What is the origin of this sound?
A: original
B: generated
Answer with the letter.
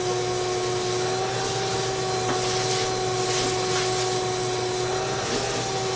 A